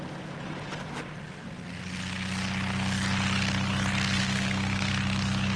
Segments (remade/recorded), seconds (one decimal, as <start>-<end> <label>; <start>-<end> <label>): 0.0-4.2 recorded; 4.2-4.9 remade; 4.9-5.6 recorded